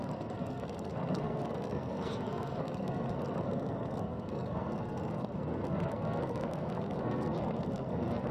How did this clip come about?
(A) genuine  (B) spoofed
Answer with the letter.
B